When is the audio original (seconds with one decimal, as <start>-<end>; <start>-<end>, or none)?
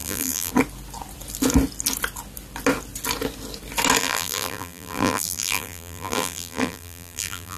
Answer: 0.5-4.0